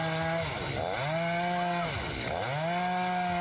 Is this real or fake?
real